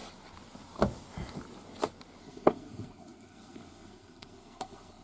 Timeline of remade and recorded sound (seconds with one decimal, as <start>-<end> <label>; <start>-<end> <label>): 0.0-2.2 recorded; 2.2-5.0 remade